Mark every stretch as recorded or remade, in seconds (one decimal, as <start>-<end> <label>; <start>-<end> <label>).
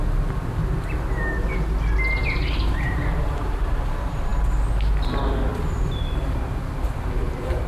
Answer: 0.0-2.2 recorded; 2.2-3.7 remade; 3.7-7.7 recorded